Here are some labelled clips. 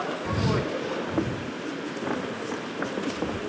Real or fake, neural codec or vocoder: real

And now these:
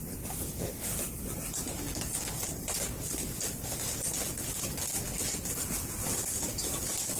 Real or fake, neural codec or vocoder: real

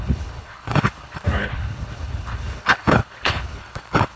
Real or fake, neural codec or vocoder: fake, codec, HILCodec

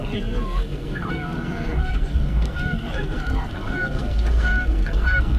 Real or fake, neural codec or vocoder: fake, codec, SNAC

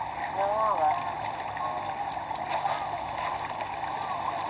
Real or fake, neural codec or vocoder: real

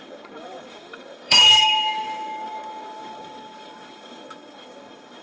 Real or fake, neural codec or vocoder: fake, codec, DAC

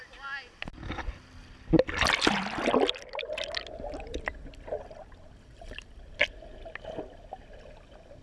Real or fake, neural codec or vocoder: real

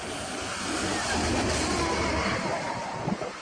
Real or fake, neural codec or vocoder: real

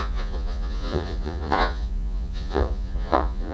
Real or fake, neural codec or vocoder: fake, vocoder, Vocos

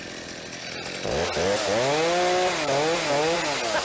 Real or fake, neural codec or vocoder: real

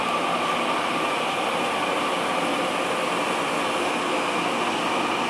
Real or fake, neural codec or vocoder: real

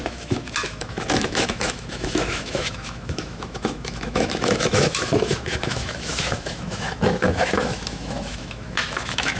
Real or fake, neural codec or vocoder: fake, autoencoder, DAC-VAE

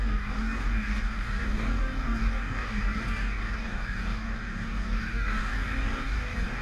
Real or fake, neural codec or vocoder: fake, codec, DAC